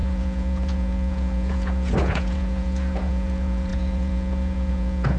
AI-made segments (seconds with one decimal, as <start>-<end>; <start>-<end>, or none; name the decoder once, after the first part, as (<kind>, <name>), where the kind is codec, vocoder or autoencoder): 0.0-5.2 (vocoder, Vocos)